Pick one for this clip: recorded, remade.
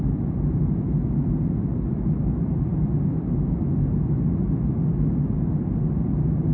recorded